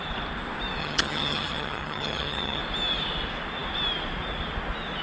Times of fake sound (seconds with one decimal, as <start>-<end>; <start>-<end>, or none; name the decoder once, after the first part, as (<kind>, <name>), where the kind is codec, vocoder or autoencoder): 0.8-2.6 (vocoder, HiFi-GAN)

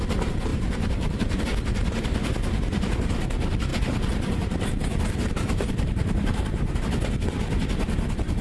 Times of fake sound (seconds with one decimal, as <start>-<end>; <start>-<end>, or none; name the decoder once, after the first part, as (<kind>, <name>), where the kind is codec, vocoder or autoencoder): 0.5-1.4 (vocoder, BigVGAN v2); 3.7-6.8

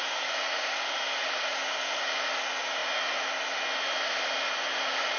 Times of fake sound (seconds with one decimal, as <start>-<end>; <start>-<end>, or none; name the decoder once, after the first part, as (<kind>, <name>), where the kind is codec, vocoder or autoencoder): none

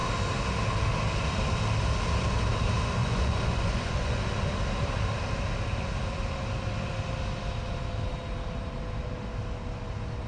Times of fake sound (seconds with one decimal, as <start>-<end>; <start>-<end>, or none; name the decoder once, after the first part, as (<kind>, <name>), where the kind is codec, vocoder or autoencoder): 3.0-4.2 (vocoder, Vocos)

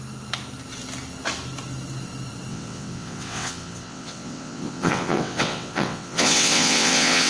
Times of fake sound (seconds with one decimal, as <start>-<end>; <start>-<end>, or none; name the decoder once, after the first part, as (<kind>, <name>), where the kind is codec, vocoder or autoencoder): 2.5-7.3 (vocoder, WaveNeXt)

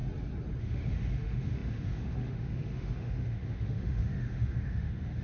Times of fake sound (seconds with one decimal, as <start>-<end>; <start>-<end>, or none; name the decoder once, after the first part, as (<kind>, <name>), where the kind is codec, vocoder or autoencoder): 0.6-5.2 (autoencoder, DAC-VAE)

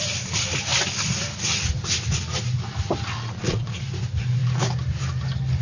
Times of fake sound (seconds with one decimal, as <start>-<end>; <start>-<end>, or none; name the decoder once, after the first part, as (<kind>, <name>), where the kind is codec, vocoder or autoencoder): 3.2-3.8 (vocoder, Vocos)

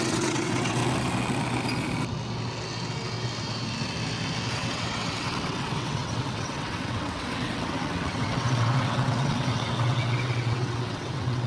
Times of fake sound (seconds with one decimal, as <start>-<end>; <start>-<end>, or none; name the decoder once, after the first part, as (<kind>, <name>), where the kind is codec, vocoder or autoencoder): 0.0-0.8 (vocoder, WaveNeXt); 4.5-11.5